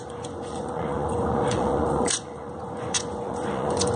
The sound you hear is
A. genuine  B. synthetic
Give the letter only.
B